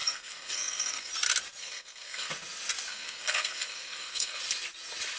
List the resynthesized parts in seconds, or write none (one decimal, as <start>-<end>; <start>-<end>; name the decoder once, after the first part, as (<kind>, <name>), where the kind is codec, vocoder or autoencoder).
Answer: 0.0-1.1 (codec, SNAC); 1.6-2.3; 2.9-4.4

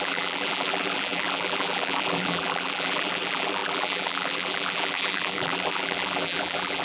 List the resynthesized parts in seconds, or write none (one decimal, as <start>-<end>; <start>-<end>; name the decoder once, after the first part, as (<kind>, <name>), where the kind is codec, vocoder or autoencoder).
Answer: 0.0-6.8 (vocoder, BigVGAN v2)

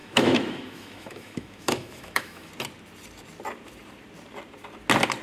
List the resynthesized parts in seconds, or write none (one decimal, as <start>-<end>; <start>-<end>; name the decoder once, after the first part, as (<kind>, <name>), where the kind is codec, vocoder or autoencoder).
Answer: 0.0-2.5 (autoencoder, DAC-VAE)

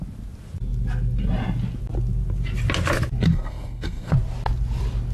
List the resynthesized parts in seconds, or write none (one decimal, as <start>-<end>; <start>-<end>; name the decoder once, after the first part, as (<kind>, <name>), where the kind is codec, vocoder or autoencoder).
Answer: 3.3-4.1 (codec, SNAC)

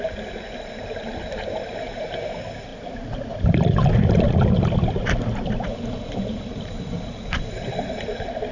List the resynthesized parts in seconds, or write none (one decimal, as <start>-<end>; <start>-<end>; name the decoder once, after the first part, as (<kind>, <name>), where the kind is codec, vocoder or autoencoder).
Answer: none

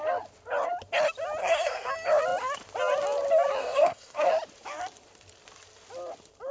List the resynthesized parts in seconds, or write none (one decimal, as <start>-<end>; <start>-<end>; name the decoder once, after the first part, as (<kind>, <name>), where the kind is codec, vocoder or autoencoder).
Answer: 1.4-1.9 (codec, SNAC); 3.6-4.3

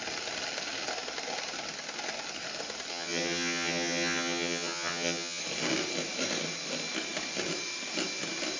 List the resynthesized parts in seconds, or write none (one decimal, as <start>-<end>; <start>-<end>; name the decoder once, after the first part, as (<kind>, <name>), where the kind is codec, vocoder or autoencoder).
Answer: 2.9-5.4 (vocoder, HiFi-GAN)